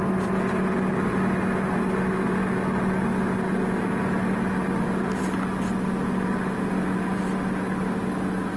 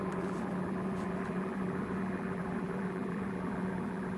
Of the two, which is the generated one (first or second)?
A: second